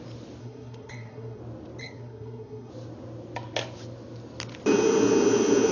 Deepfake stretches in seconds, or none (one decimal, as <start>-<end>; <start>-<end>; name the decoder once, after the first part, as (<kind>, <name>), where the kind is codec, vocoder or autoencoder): 0.4-1.4 (codec, SNAC); 1.8-2.7